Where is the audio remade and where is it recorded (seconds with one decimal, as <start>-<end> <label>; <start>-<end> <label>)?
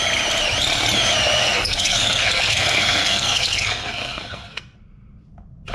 0.0-1.4 recorded; 1.4-4.8 remade; 4.8-5.7 recorded